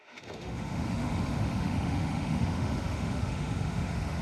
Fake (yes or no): yes